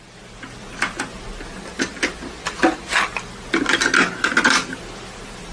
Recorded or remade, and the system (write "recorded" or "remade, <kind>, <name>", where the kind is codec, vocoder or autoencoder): recorded